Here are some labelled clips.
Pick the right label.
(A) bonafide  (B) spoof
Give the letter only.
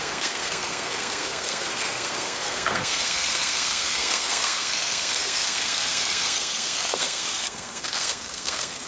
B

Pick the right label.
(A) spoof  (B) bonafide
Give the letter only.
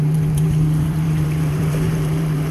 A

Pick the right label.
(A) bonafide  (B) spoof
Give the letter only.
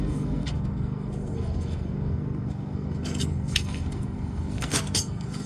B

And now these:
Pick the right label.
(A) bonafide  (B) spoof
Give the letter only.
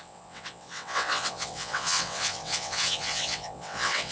B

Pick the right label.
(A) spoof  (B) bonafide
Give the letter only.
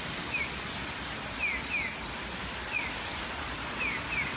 B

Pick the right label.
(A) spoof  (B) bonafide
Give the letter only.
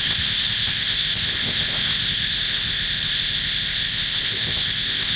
A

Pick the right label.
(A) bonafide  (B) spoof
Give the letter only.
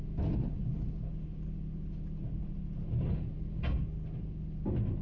A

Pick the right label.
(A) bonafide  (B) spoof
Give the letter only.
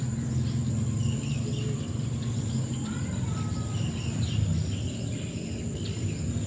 A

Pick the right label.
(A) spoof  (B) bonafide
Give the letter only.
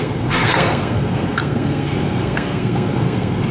A